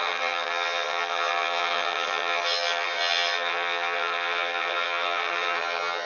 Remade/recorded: remade